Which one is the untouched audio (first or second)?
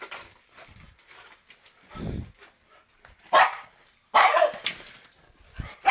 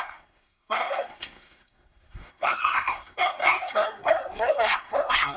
first